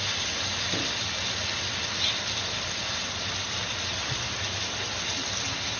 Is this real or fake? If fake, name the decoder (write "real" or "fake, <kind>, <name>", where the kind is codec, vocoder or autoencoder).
real